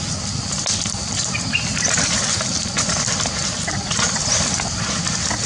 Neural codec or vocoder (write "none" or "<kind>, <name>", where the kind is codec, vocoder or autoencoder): none